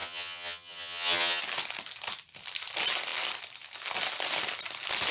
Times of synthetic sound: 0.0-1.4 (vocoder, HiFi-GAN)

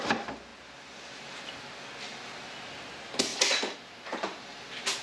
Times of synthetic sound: 3.3-4.4 (vocoder, BigVGAN v2)